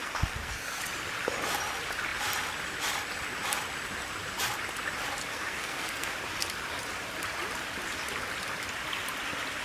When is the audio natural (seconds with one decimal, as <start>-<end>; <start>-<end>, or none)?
0.8-5.3; 6.1-9.6